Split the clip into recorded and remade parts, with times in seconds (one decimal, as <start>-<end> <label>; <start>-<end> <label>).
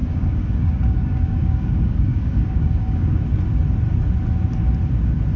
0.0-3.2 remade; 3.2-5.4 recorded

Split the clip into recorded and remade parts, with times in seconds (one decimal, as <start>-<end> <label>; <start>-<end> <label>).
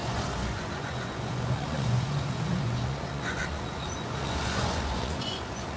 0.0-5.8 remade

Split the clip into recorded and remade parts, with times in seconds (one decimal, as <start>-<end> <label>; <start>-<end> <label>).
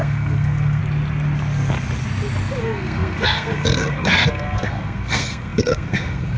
0.0-0.8 remade; 0.8-2.6 recorded; 2.6-6.4 remade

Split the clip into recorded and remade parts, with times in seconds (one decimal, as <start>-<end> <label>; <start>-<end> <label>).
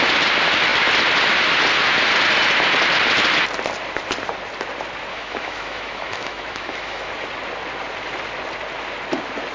0.0-5.1 recorded; 5.1-7.1 remade; 7.1-9.5 recorded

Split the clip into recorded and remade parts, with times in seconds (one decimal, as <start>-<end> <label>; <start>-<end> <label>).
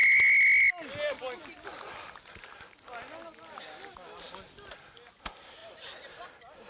0.0-6.7 recorded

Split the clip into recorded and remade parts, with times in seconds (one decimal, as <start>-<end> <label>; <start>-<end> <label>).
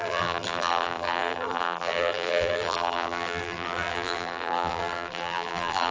0.0-5.9 remade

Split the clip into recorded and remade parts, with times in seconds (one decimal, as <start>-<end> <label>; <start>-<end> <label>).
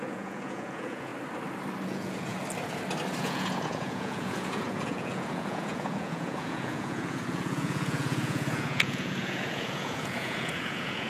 0.0-1.1 remade; 1.1-1.9 recorded; 1.9-2.3 remade; 2.3-3.2 recorded; 3.2-11.1 remade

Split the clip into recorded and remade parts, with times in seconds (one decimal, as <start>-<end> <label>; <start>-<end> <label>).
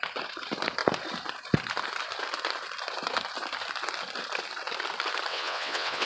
0.0-5.3 recorded; 5.3-6.1 remade